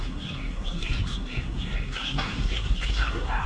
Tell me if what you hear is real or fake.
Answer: fake